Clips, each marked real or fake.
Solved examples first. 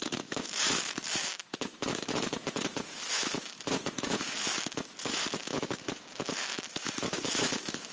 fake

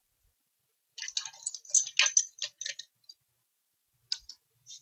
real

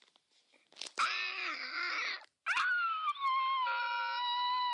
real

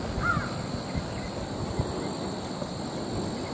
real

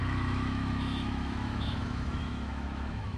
fake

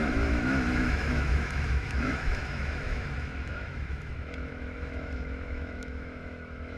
fake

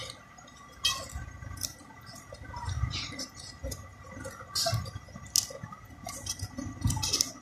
real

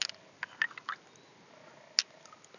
real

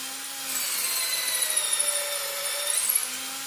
real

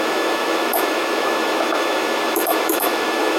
fake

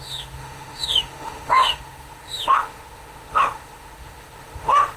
fake